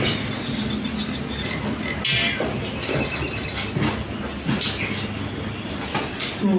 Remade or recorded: recorded